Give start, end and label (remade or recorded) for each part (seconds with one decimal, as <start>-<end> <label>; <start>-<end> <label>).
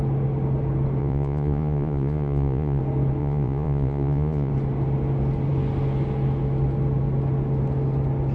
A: 0.0-1.0 recorded; 1.0-2.8 remade; 2.8-3.2 recorded; 3.2-4.5 remade; 4.5-8.3 recorded